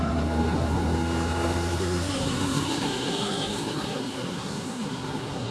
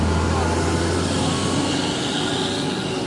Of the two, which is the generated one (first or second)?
first